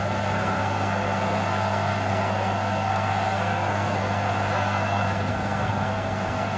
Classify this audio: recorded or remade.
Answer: remade